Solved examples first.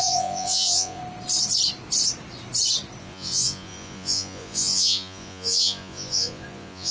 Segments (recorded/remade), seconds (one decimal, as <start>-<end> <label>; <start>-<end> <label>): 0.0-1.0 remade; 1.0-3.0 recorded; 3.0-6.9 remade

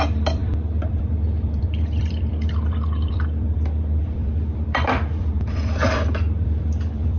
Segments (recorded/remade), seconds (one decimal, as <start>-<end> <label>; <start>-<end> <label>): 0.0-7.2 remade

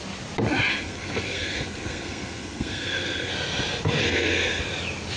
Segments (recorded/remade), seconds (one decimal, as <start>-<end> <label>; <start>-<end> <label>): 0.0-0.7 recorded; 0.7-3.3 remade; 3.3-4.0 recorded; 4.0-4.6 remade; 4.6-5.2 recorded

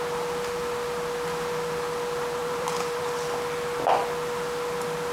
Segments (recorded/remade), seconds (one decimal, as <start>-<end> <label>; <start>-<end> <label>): 0.0-2.4 recorded; 2.4-3.0 remade; 3.0-5.1 recorded

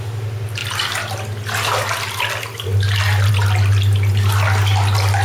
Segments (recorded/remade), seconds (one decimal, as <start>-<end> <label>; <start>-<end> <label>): 0.0-5.2 recorded

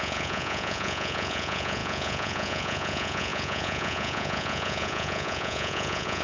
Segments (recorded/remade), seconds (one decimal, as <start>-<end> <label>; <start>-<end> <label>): 0.0-6.2 remade

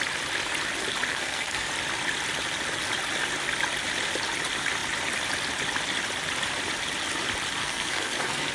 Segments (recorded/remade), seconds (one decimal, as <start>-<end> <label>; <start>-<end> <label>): 0.0-1.1 recorded; 1.1-1.7 remade; 1.7-7.6 recorded; 7.6-8.5 remade

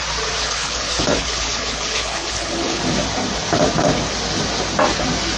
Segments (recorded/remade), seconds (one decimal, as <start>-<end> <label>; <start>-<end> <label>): 0.0-0.4 recorded; 0.4-2.8 remade; 2.8-5.4 recorded